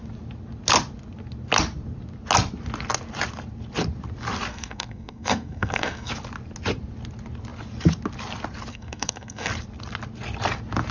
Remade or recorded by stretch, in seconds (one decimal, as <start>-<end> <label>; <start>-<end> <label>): 0.0-4.5 recorded; 4.5-6.1 remade; 6.1-8.7 recorded; 8.7-9.5 remade; 9.5-10.9 recorded